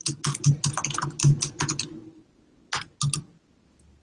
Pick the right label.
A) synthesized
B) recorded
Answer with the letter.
B